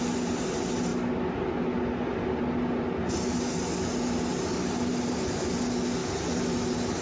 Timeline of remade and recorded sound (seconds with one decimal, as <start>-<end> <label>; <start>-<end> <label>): 0.0-7.0 recorded